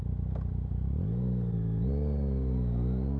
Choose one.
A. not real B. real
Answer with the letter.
B